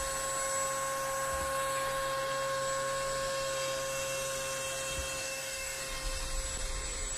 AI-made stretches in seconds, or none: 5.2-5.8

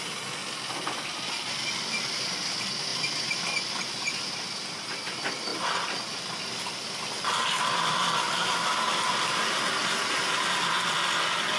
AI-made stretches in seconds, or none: none